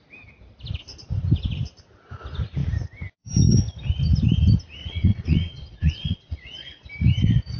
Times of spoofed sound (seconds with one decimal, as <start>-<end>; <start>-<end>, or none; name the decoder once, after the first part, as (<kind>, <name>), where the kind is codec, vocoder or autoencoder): 4.8-6.8 (vocoder, Vocos)